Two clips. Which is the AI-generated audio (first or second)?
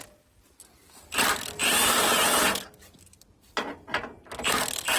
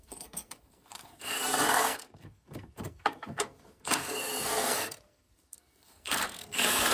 second